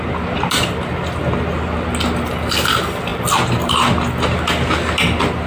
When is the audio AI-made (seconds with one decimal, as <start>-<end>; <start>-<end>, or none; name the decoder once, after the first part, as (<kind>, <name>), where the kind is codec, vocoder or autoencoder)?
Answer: none